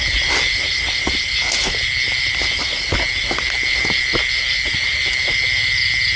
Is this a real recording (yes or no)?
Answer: yes